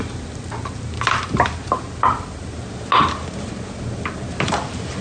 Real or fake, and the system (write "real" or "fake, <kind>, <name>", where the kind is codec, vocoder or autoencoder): real